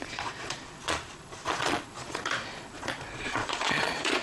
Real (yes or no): no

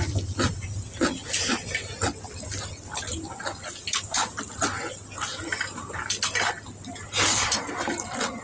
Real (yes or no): yes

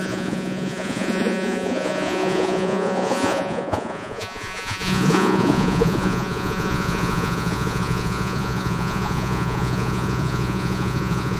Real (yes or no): no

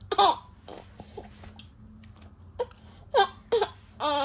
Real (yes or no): yes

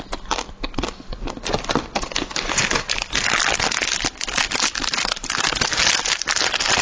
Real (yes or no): yes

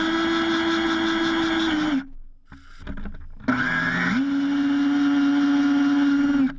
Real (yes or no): yes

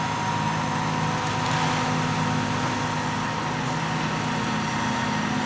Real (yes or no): yes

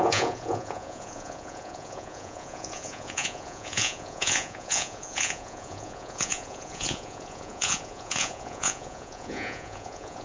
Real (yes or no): no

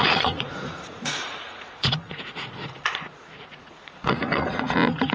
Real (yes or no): no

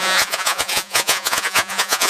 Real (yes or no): no